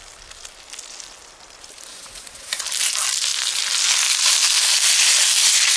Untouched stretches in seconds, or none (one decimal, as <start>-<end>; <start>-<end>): 0.0-1.9; 2.6-5.8